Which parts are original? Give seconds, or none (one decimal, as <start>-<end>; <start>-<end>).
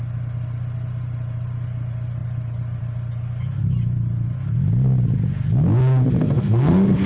0.0-6.2